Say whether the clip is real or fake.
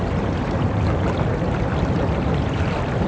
real